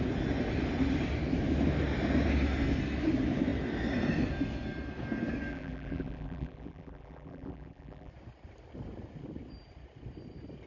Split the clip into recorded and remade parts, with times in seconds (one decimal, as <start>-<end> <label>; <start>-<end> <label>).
0.0-5.5 recorded; 5.5-8.1 remade; 8.1-10.7 recorded